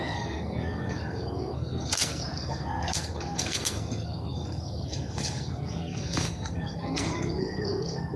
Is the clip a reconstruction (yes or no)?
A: yes